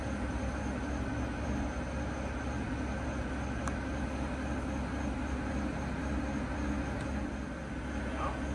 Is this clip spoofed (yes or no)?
no